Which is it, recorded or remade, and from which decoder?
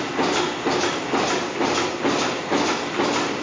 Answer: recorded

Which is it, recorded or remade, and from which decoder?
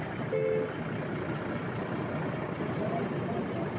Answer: recorded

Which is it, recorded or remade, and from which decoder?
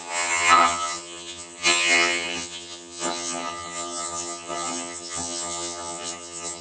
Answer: remade, vocoder, HiFi-GAN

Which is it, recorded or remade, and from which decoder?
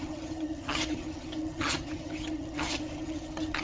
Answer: remade, vocoder, HiFi-GAN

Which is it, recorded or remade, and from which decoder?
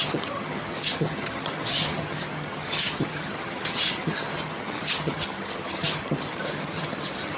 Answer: remade, vocoder, HiFi-GAN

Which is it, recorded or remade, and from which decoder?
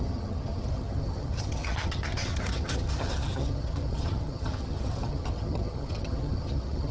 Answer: remade, vocoder, HiFi-GAN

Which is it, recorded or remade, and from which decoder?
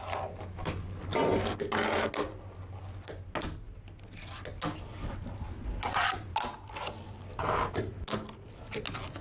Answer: recorded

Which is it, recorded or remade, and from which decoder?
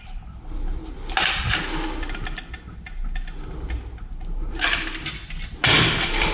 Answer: recorded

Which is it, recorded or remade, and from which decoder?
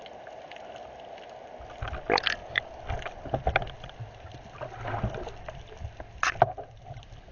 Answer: recorded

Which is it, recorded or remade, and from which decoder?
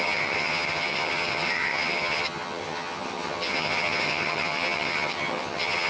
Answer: remade, vocoder, HiFi-GAN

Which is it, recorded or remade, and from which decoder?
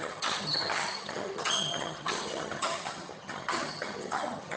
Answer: remade, vocoder, HiFi-GAN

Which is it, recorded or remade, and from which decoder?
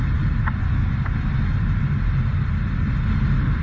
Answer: recorded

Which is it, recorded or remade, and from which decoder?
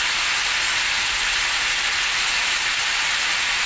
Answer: recorded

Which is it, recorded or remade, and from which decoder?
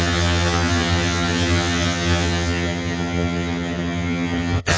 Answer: remade, vocoder, HiFi-GAN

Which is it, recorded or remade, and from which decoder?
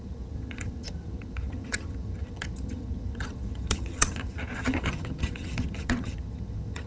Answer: remade, vocoder, HiFi-GAN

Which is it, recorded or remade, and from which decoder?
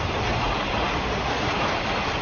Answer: recorded